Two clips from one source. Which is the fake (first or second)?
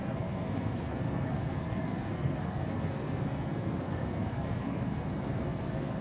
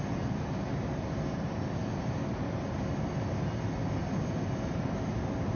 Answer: first